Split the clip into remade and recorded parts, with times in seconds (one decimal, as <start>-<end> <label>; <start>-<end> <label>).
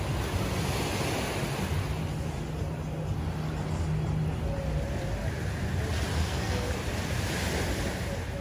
0.0-6.2 recorded; 6.2-6.7 remade; 6.7-8.4 recorded